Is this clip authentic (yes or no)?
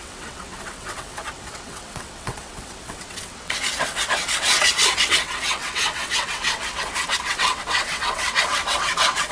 no